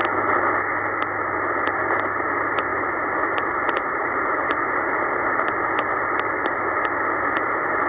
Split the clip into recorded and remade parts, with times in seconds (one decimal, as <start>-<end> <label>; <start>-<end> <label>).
0.0-1.4 recorded; 1.4-7.9 remade